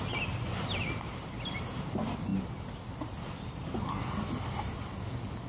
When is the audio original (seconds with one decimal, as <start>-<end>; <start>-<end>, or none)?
0.0-5.5